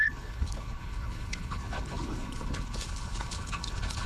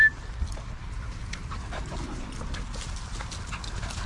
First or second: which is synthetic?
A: first